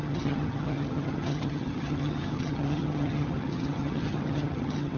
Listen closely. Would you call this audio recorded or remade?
remade